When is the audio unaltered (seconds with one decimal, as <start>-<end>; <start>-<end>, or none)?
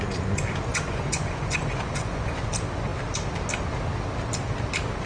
0.0-0.7; 2.4-5.1